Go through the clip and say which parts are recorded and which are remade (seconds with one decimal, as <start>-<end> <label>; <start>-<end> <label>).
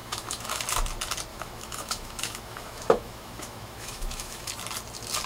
0.0-0.6 remade; 0.6-1.3 recorded; 1.3-4.5 remade; 4.5-5.3 recorded